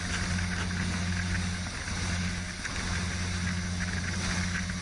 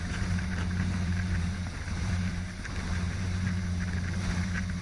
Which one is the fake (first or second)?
second